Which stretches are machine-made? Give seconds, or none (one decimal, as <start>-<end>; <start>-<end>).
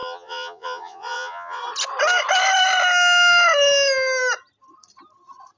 0.0-1.6